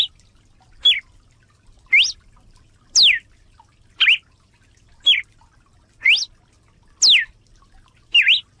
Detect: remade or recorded recorded